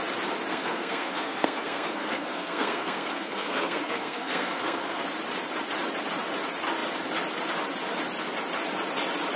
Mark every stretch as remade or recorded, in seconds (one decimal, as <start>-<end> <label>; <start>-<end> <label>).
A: 0.0-0.5 recorded; 0.5-5.0 remade; 5.0-9.4 recorded